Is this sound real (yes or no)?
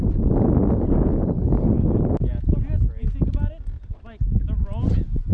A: yes